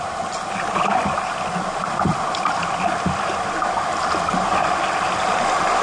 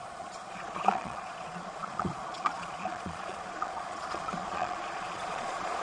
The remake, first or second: second